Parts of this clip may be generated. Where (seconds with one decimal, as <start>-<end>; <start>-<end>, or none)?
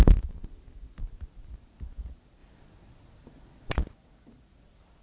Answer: none